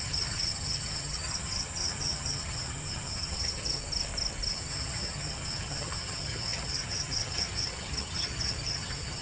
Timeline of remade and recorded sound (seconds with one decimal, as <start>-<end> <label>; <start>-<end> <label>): 0.0-3.8 remade; 3.8-4.5 recorded; 4.5-9.2 remade